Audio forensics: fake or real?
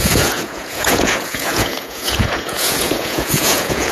fake